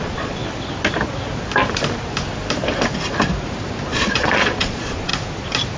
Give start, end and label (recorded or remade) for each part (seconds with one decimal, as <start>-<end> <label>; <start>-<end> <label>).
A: 0.0-0.4 remade; 0.4-3.9 recorded; 3.9-5.1 remade; 5.1-5.8 recorded